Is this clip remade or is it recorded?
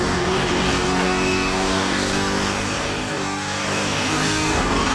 remade